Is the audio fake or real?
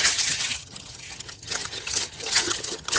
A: fake